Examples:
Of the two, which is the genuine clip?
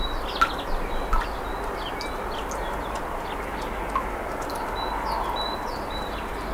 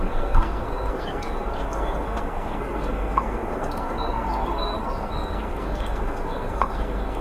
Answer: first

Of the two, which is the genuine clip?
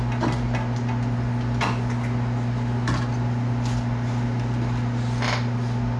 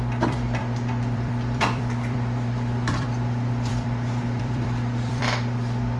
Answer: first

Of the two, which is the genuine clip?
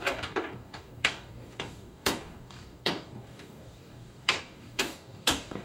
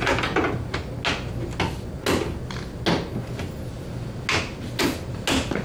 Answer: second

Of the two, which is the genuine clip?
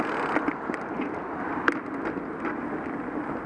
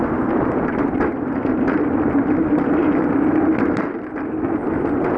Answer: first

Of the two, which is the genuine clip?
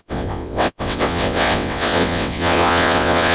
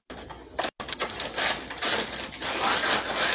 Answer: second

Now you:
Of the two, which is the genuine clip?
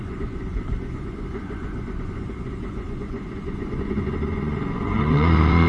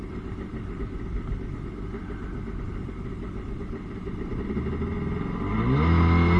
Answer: second